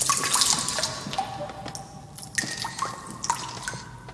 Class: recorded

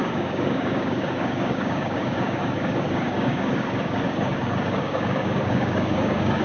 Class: remade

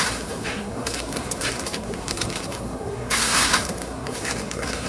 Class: remade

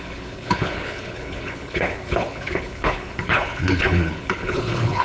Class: remade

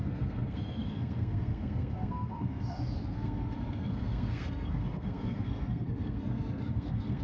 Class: remade